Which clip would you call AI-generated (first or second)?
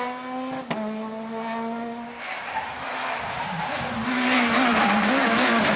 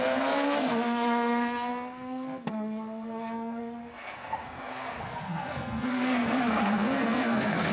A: second